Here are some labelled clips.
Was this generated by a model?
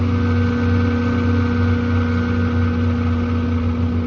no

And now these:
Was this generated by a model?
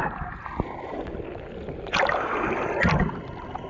no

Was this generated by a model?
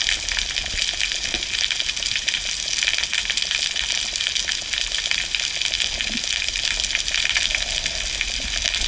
no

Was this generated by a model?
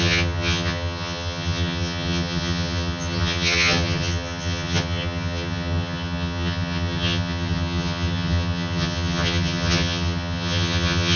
yes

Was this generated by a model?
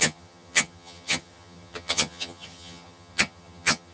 yes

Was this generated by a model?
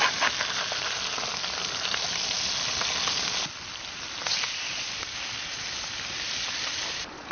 no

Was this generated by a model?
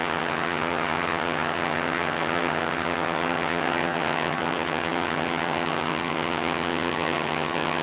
yes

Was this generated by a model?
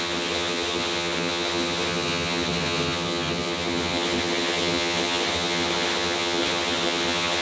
yes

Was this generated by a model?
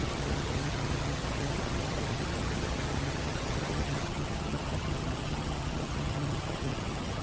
yes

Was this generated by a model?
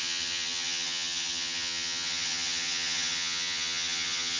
yes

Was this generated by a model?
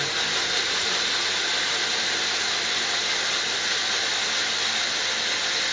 no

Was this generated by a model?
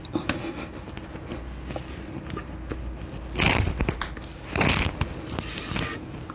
no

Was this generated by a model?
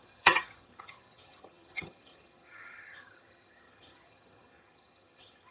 yes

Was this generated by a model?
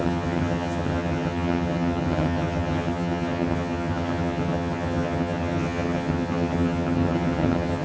yes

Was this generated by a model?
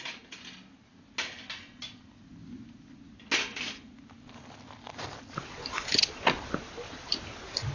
no